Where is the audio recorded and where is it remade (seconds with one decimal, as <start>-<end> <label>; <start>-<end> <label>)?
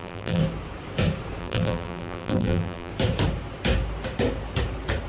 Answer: 0.0-0.4 remade; 0.4-1.4 recorded; 1.4-2.9 remade; 2.9-5.1 recorded